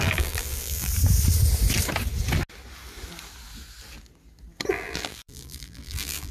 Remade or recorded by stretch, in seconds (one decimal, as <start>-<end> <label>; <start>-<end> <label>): 0.0-0.9 remade; 0.9-4.7 recorded; 4.7-6.3 remade